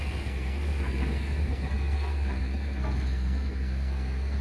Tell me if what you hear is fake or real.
fake